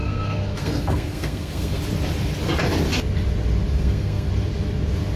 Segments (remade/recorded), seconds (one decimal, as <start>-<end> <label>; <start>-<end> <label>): 0.0-1.8 remade; 1.8-3.7 recorded; 3.7-4.3 remade; 4.3-5.2 recorded